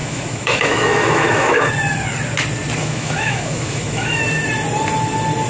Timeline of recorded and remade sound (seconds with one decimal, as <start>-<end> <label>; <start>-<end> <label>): 0.0-1.7 remade; 1.7-2.8 recorded; 2.8-4.2 remade; 4.2-5.5 recorded